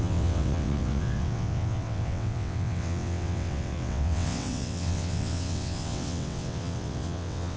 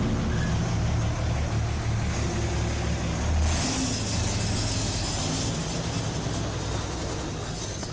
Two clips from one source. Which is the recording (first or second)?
second